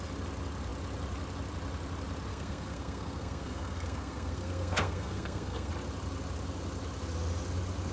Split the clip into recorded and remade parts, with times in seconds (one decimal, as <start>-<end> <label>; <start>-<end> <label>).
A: 0.0-2.3 recorded; 2.3-5.7 remade; 5.7-7.9 recorded

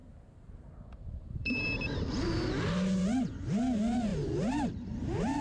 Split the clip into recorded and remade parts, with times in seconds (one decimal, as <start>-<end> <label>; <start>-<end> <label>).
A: 0.0-2.0 remade; 2.0-4.1 recorded; 4.1-5.4 remade

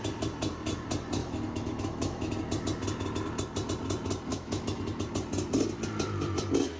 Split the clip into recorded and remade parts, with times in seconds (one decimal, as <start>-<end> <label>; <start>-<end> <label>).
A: 0.0-1.2 recorded; 1.2-2.3 remade; 2.3-4.3 recorded; 4.3-4.8 remade; 4.8-6.8 recorded